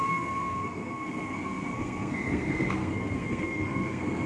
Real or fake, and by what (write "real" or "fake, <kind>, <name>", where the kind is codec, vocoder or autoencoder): fake, codec, SNAC